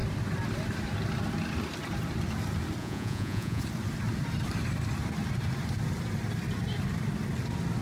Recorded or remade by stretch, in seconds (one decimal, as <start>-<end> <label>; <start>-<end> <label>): 0.0-2.8 recorded; 2.8-3.6 remade; 3.6-7.8 recorded